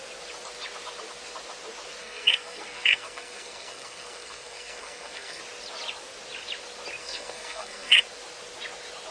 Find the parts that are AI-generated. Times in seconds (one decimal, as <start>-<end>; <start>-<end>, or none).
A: 2.0-5.4; 7.0-8.0